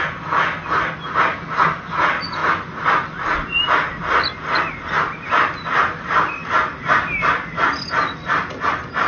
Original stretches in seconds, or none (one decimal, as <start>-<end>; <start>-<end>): 0.0-9.1